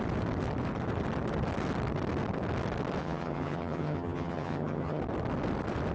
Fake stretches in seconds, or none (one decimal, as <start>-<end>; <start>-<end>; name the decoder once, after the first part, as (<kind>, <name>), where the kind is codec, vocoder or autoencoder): 3.0-5.0 (vocoder, HiFi-GAN)